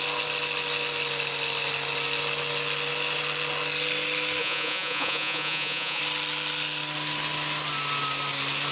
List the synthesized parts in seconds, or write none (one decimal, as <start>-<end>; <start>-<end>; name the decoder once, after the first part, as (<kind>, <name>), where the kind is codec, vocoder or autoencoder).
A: 4.4-6.0 (vocoder, Vocos)